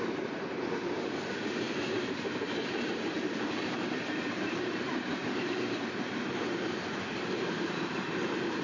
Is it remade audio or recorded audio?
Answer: remade